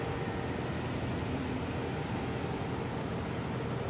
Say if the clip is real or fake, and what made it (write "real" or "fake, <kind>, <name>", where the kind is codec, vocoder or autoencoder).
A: real